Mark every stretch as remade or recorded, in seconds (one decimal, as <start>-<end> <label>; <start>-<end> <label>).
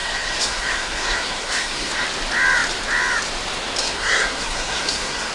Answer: 0.0-1.9 remade; 1.9-3.8 recorded; 3.8-5.3 remade